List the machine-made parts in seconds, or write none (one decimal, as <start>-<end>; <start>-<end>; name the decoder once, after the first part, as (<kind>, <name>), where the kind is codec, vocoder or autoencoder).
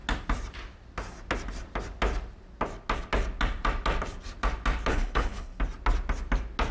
4.9-5.6 (codec, HILCodec)